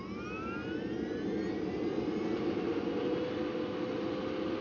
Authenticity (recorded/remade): recorded